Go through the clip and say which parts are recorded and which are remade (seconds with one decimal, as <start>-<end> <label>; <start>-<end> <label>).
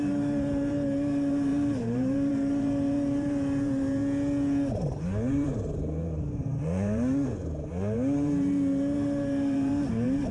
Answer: 0.0-4.0 remade; 4.0-4.7 recorded; 4.7-10.3 remade